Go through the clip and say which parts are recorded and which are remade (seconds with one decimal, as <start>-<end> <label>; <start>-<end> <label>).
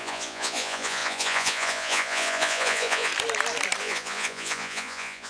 0.0-3.1 remade; 3.1-3.8 recorded; 3.8-5.3 remade